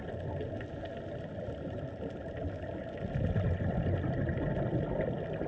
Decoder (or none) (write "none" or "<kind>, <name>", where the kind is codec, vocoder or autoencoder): none